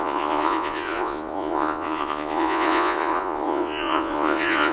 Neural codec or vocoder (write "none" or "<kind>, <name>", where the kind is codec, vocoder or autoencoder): vocoder, Vocos